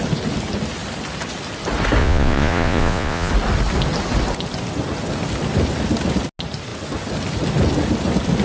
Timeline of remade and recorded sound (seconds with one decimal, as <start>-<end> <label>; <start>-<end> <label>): 0.0-2.0 recorded; 2.0-3.3 remade; 3.3-8.4 recorded